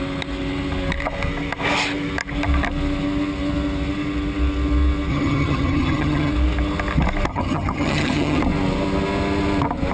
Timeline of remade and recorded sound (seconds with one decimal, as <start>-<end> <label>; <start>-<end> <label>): 0.0-5.1 recorded; 5.1-6.3 remade; 6.3-7.3 recorded; 7.3-8.4 remade; 8.4-9.9 recorded